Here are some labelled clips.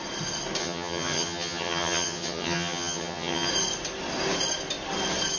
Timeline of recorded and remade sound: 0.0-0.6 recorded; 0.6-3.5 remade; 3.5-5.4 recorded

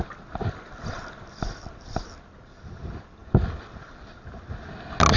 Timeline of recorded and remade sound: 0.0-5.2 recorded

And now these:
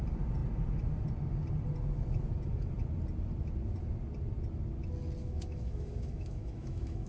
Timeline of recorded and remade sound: 0.0-5.2 recorded; 5.2-7.1 remade

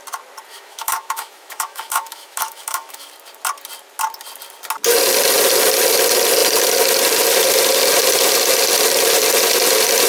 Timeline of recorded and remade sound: 0.0-0.5 recorded; 0.5-3.1 remade; 3.1-10.1 recorded